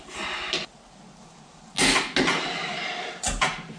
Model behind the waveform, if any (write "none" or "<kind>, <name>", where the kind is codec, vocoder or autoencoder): none